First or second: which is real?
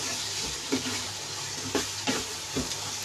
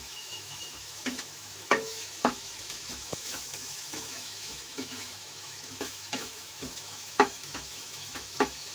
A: first